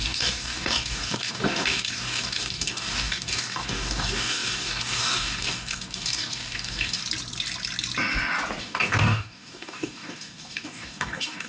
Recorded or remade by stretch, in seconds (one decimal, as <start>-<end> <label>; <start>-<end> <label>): 0.0-7.0 remade; 7.0-8.6 recorded; 8.6-11.5 remade